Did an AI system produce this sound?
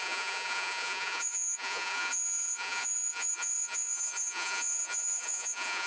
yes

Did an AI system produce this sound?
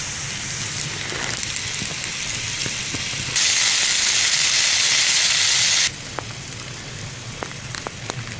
no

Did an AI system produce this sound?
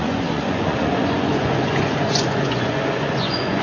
yes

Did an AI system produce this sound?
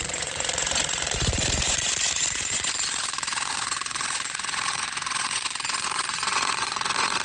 yes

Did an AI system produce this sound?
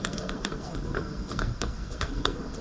yes